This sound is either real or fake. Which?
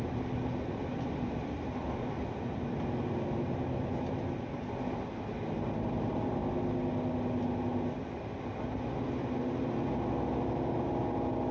real